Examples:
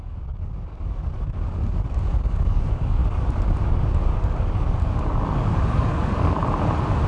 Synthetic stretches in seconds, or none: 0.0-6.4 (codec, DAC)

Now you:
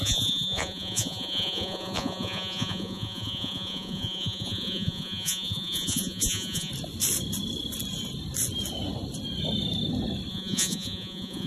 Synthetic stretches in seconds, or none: 0.0-6.7 (vocoder, Vocos); 10.3-11.5

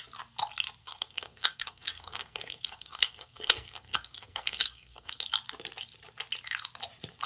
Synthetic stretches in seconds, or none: 0.8-5.2 (codec, SNAC)

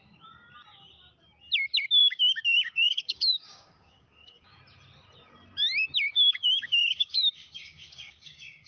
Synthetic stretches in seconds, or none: 2.0-4.6 (codec, DAC); 6.1-8.7

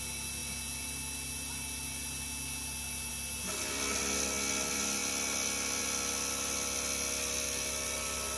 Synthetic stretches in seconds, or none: none